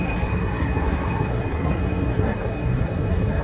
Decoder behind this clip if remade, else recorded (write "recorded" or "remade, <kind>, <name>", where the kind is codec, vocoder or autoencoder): remade, codec, SNAC